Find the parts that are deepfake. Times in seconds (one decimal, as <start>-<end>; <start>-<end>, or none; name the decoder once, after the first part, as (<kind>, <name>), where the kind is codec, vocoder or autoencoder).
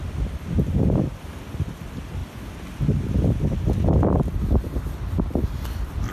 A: 0.0-2.2 (vocoder, BigVGAN v2); 5.1-6.1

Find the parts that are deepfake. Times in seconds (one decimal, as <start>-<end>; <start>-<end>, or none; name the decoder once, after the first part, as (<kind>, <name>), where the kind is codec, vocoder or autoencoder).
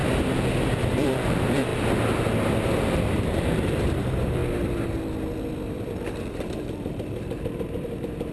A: 0.8-1.7 (vocoder, BigVGAN v2); 3.1-4.4; 6.2-8.3